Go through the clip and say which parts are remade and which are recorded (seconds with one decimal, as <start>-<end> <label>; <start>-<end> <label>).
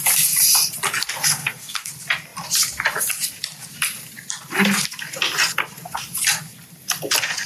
0.0-1.4 recorded; 1.4-1.9 remade; 1.9-7.5 recorded